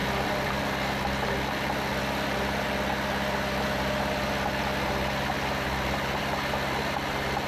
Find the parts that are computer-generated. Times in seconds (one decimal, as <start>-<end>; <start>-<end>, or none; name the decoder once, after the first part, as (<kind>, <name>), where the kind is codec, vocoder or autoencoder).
0.0-0.5 (vocoder, BigVGAN v2)